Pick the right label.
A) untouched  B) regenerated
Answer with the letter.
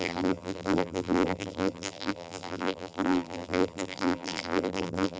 B